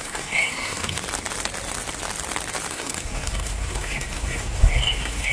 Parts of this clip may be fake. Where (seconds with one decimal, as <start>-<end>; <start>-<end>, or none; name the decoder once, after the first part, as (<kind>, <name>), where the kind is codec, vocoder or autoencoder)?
0.0-1.0 (codec, SNAC); 2.7-5.3